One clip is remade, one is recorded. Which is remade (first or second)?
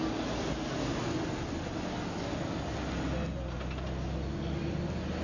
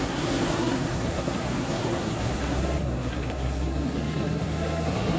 second